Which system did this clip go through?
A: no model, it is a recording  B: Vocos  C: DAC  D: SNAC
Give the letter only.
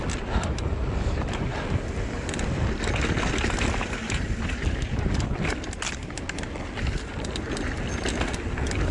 A